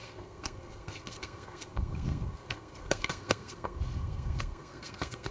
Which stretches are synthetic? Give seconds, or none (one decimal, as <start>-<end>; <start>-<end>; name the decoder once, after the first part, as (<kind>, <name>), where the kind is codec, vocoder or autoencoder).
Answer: 0.0-5.3 (codec, SNAC)